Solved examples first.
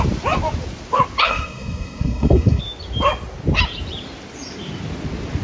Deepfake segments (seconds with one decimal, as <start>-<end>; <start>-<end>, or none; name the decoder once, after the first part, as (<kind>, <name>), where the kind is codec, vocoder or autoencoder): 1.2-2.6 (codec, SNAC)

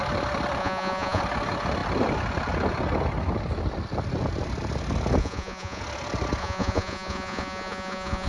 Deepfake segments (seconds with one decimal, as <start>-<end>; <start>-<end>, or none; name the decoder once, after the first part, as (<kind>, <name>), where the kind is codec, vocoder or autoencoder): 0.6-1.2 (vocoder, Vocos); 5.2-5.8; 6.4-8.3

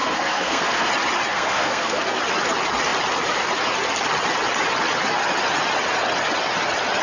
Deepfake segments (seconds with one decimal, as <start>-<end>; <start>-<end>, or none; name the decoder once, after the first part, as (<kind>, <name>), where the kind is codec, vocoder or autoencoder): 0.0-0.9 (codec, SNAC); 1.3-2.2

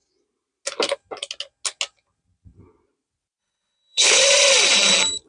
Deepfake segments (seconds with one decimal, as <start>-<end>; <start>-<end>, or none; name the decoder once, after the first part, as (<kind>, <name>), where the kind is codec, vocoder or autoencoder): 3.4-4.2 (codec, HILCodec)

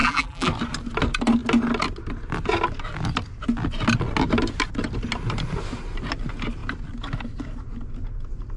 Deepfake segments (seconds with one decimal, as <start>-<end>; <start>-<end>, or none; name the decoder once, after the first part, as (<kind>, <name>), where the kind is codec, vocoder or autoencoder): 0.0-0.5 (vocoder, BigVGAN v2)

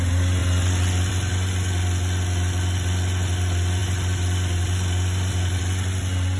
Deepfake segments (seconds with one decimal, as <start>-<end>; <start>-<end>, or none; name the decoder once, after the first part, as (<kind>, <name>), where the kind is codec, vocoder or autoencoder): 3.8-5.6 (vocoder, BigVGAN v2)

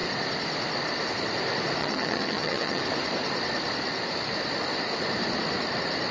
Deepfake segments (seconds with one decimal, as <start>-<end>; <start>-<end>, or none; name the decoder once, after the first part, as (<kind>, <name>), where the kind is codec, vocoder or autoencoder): 1.8-2.8 (vocoder, HiFi-GAN)